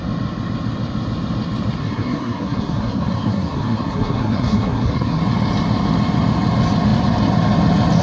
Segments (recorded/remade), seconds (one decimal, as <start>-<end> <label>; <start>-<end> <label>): 0.0-1.8 recorded; 1.8-5.2 remade; 5.2-8.0 recorded